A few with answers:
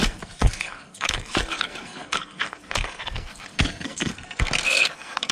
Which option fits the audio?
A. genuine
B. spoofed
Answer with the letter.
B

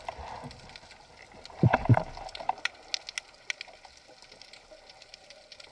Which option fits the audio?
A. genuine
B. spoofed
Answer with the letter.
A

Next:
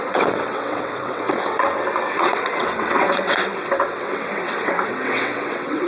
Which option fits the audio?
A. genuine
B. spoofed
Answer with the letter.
B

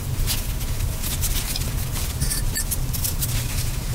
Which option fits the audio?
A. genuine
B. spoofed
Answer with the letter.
A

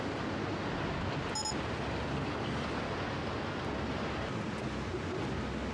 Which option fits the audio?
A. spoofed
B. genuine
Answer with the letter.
B